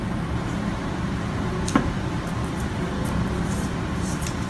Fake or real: real